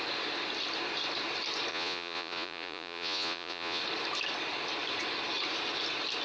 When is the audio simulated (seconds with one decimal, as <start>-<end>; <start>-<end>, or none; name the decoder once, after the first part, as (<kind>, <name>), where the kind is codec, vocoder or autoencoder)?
1.7-3.8 (vocoder, Vocos)